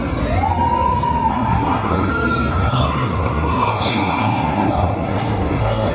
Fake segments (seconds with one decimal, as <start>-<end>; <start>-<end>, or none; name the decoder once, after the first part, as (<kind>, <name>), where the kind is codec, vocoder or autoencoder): 1.3-2.1 (codec, SNAC); 2.5-5.9